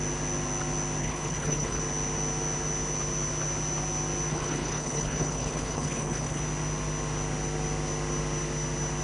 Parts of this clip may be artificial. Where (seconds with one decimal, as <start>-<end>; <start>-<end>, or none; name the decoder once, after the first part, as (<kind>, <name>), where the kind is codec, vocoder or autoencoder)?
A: 1.0-1.8 (codec, HILCodec); 4.3-6.4